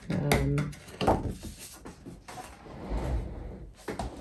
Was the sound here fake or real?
real